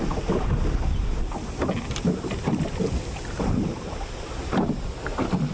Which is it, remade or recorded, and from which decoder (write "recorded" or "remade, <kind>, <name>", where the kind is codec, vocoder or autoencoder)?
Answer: recorded